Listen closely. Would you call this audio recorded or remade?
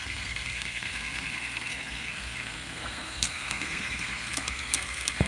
remade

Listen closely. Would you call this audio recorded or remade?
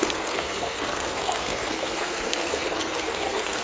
remade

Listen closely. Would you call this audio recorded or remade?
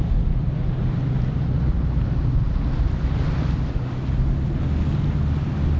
recorded